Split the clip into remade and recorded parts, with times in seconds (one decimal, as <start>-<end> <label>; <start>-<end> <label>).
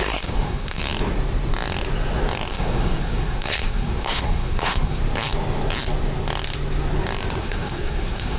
0.0-0.8 remade; 0.8-2.5 recorded; 2.5-5.0 remade; 5.0-7.4 recorded; 7.4-8.4 remade